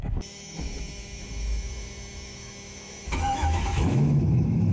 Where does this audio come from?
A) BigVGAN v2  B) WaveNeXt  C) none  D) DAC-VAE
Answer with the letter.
D